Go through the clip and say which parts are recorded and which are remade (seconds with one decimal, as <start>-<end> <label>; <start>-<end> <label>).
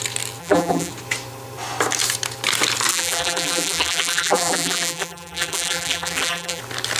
0.0-0.4 recorded; 0.4-0.9 remade; 0.9-2.9 recorded; 2.9-6.6 remade; 6.6-7.0 recorded